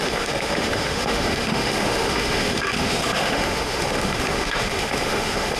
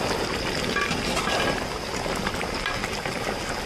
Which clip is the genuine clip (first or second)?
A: second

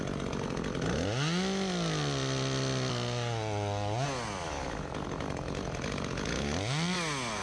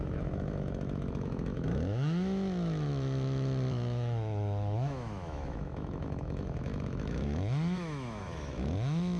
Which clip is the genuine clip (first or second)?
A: first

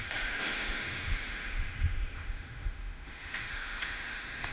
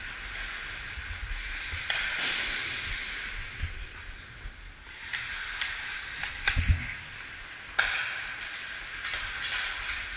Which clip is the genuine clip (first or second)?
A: second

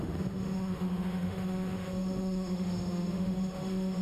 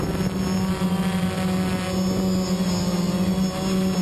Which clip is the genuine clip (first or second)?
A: second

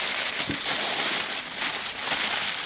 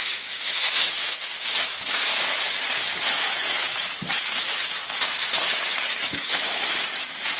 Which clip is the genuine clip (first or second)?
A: first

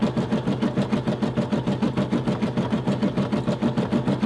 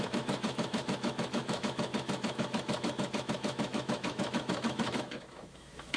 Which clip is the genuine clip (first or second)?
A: first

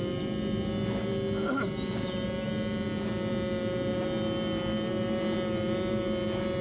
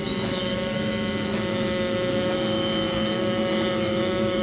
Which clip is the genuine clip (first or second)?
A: first